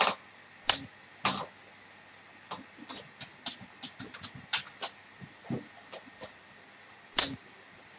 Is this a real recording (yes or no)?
yes